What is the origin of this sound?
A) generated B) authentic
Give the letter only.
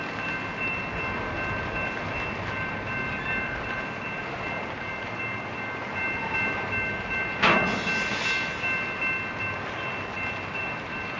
B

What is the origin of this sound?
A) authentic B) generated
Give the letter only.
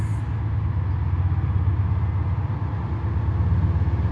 A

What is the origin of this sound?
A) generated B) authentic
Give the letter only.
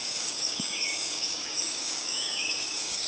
A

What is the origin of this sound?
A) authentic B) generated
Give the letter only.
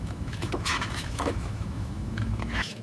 B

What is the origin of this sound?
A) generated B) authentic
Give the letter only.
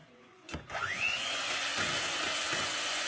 A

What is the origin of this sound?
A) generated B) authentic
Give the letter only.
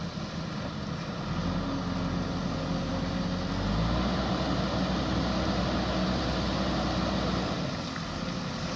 B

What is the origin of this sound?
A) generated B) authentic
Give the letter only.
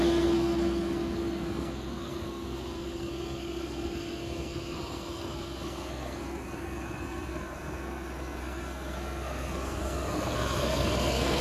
A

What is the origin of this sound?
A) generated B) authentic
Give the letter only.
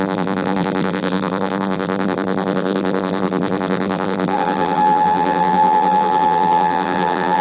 A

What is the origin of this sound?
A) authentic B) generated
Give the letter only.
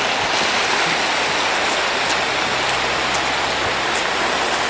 A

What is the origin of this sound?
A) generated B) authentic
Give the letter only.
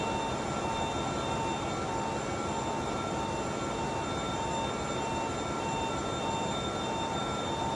B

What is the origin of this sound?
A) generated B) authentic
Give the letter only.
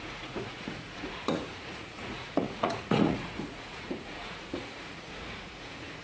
A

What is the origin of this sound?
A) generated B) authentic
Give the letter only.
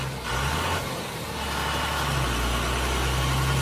B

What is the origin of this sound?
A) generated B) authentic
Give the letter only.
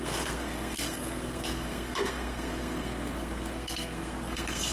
A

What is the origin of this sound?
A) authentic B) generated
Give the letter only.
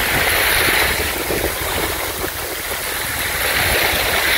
A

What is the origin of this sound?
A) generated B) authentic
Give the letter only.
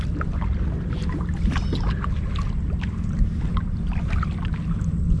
B